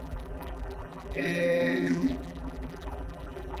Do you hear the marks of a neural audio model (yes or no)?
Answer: yes